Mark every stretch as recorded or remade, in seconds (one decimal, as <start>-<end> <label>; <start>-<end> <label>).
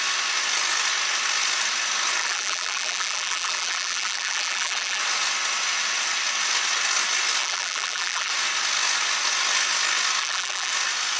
0.0-2.2 recorded; 2.2-5.0 remade; 5.0-7.4 recorded; 7.4-8.3 remade; 8.3-10.2 recorded; 10.2-10.7 remade; 10.7-11.2 recorded